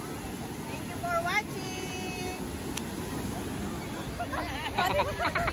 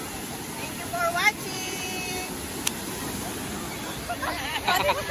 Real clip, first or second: first